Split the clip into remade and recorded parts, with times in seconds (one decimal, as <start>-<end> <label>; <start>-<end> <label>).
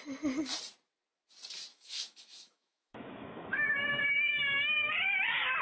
0.0-1.7 recorded; 1.7-4.9 remade; 4.9-5.6 recorded